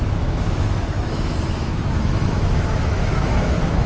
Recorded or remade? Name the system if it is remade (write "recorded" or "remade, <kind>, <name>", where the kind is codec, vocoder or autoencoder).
remade, autoencoder, DAC-VAE